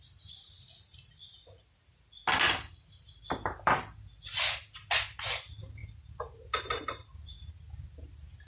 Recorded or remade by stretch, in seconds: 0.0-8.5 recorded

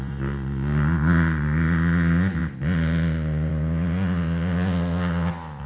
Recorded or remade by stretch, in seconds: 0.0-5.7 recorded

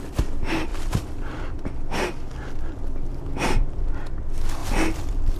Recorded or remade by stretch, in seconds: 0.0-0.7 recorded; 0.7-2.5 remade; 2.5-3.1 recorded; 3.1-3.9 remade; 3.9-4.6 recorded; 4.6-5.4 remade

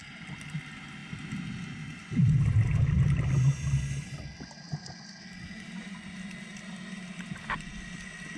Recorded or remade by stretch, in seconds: 0.0-8.4 recorded